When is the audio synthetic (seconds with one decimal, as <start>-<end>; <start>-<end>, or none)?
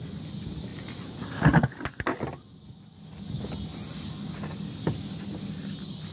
none